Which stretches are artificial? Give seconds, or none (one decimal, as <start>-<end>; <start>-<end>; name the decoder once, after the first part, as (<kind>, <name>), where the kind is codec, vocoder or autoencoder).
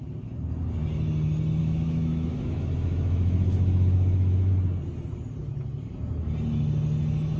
1.6-4.5 (autoencoder, DAC-VAE)